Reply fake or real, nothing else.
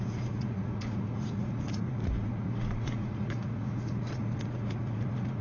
fake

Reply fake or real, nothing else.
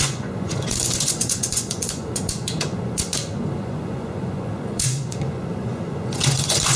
fake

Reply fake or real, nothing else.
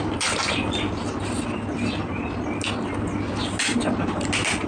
real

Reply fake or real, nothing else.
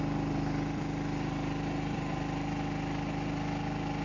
real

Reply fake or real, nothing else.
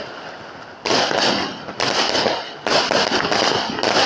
real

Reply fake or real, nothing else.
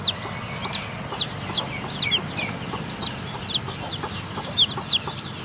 real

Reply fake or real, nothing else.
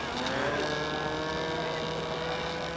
real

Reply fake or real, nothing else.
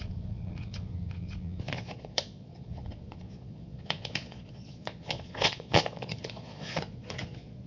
fake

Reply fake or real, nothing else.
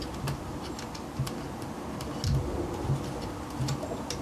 real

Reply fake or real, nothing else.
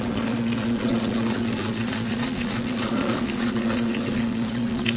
fake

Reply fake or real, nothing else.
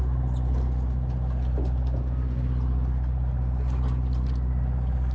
real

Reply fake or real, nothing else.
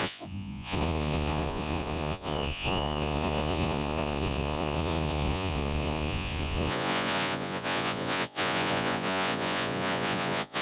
fake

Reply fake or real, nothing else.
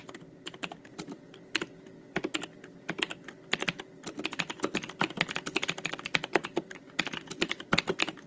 real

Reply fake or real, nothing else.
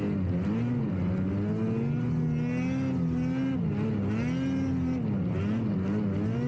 real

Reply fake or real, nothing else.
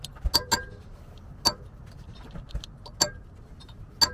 real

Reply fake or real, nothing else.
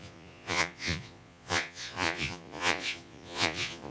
fake